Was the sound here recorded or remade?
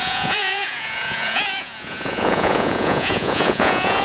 remade